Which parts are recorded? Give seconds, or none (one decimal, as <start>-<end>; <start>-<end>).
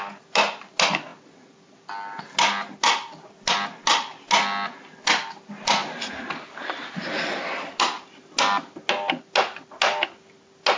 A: 0.0-10.8